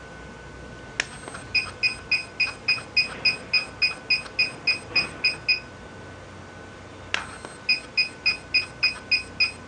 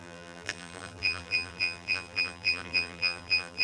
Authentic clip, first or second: first